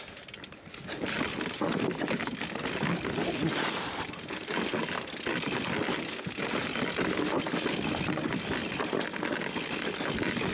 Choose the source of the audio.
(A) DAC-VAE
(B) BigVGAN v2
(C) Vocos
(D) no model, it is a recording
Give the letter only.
D